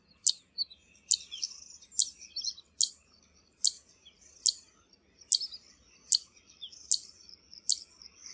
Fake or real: real